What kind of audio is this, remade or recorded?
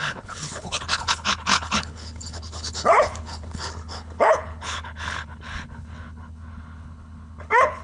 remade